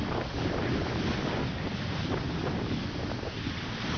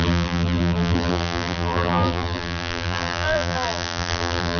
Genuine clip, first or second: first